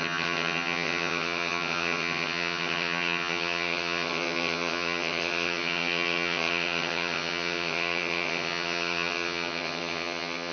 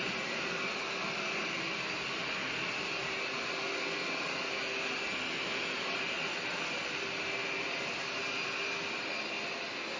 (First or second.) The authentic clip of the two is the second